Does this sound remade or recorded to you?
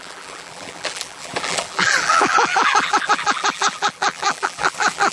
remade